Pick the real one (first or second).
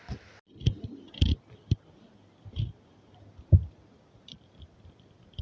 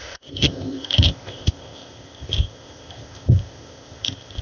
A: first